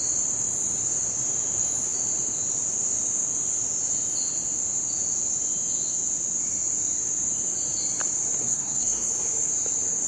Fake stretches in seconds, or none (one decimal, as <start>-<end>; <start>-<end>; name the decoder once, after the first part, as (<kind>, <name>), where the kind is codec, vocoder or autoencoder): 8.4-9.1 (codec, SNAC)